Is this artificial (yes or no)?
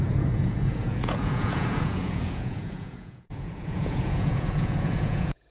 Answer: yes